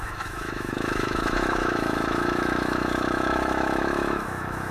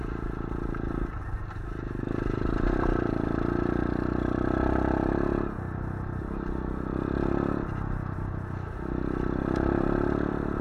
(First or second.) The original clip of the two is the second